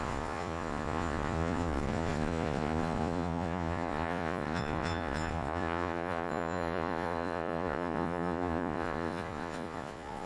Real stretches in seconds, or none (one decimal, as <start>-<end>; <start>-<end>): none